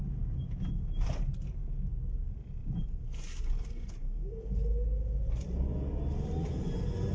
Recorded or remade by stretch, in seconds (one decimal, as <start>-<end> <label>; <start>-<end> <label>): 0.0-7.1 recorded